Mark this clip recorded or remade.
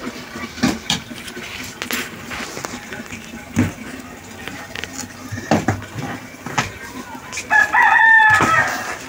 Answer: recorded